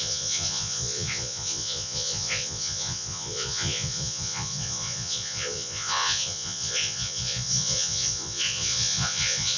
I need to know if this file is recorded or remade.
remade